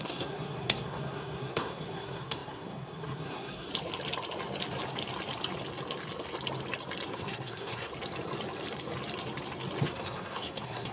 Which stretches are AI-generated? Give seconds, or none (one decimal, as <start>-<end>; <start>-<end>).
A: 0.0-3.7; 7.1-7.9; 9.8-10.9